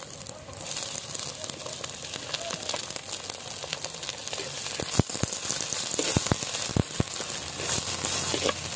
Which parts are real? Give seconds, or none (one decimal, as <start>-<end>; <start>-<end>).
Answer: 0.0-8.8